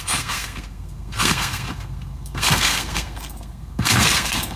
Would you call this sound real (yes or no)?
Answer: no